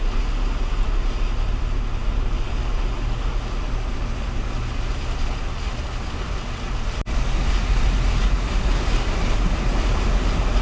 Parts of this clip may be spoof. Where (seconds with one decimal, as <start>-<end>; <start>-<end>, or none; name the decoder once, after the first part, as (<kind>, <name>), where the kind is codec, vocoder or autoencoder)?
none